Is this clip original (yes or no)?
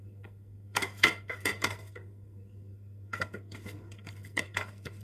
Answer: no